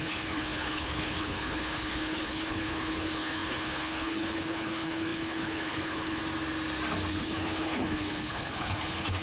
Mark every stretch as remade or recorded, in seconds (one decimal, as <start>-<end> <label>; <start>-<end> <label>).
0.0-6.2 remade; 6.2-7.1 recorded; 7.1-9.2 remade